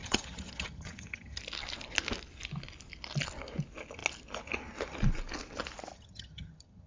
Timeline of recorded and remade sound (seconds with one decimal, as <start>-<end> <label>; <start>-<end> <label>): 0.0-1.4 remade; 1.4-5.9 recorded; 5.9-6.9 remade